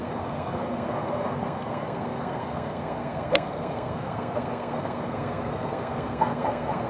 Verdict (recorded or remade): remade